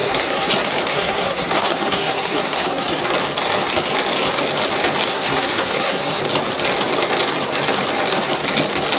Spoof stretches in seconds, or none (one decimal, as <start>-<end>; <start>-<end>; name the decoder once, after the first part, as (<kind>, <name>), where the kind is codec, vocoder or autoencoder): 0.0-0.5 (codec, SNAC); 0.9-3.0; 5.1-6.2